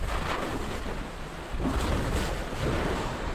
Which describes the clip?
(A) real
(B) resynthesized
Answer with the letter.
A